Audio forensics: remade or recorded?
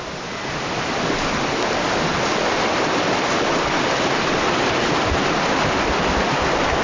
recorded